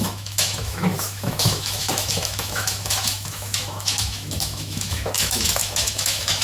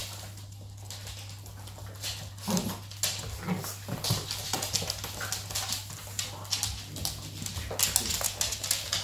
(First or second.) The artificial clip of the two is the first